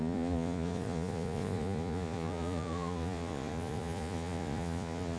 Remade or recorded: remade